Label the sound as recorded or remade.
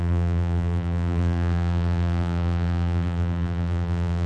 remade